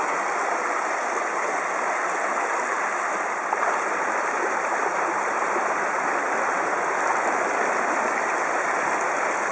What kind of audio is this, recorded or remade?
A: recorded